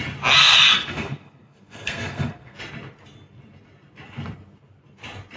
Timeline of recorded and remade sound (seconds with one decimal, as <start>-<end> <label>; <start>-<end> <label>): 0.0-0.4 recorded; 0.4-2.6 remade; 2.6-5.4 recorded